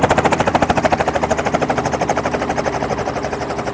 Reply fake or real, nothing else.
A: real